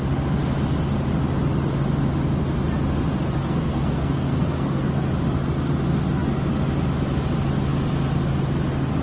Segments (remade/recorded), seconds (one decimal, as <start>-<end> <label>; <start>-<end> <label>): 0.0-3.4 recorded; 3.4-5.1 remade; 5.1-9.0 recorded